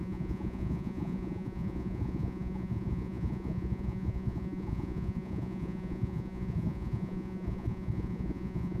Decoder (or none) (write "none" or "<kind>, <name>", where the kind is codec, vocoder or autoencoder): vocoder, Vocos